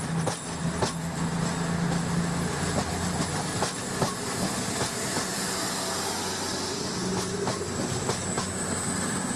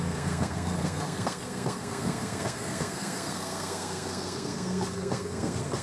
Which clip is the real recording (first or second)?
first